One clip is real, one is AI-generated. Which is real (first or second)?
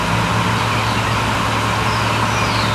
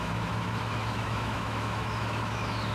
first